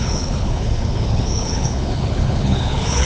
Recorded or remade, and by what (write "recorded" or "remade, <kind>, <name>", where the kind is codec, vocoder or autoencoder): remade, codec, HILCodec